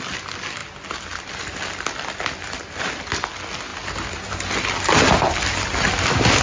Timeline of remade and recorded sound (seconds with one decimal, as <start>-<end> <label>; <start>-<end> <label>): 0.0-6.4 recorded